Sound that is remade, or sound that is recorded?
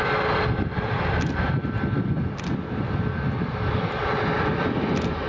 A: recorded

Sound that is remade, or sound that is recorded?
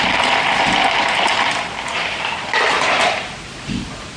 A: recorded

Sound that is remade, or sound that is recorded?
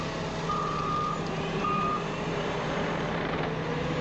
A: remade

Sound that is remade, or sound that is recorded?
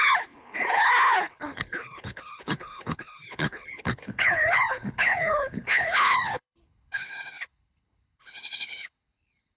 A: remade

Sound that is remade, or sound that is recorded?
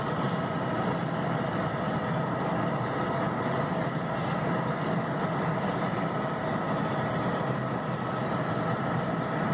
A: recorded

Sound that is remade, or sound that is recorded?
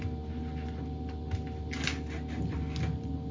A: recorded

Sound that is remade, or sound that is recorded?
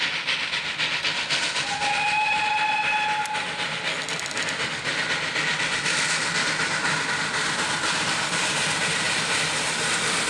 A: recorded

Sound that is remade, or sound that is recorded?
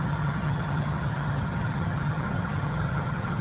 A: remade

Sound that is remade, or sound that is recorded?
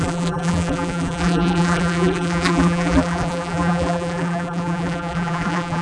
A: remade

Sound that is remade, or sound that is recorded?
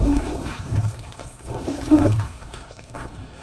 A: remade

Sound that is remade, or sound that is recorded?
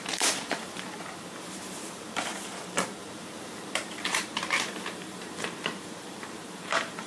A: remade